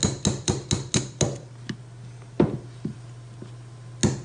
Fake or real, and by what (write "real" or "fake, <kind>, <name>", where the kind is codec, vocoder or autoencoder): real